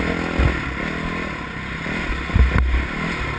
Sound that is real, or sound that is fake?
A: real